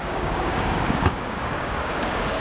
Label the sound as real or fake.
fake